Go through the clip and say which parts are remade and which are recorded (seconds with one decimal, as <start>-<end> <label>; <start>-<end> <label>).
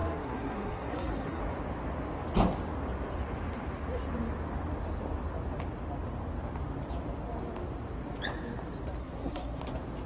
0.0-1.4 remade; 1.4-9.0 recorded; 9.0-9.6 remade; 9.6-10.1 recorded